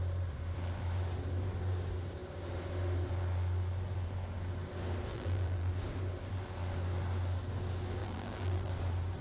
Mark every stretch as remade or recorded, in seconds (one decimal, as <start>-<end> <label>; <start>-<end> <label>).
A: 0.0-5.1 recorded; 5.1-5.7 remade; 5.7-8.0 recorded; 8.0-8.7 remade; 8.7-9.2 recorded